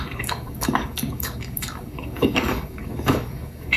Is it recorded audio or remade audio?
remade